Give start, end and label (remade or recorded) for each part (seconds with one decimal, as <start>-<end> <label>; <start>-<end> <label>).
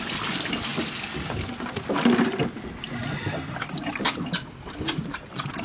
0.0-5.6 recorded